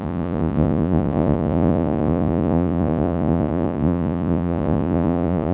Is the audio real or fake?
fake